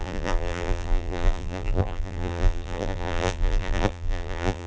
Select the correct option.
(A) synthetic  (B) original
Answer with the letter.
A